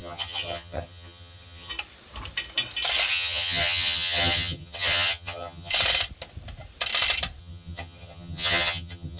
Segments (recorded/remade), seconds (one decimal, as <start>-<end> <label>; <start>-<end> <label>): 0.0-1.7 remade; 1.7-3.1 recorded; 3.1-5.7 remade; 5.7-7.4 recorded; 7.4-9.2 remade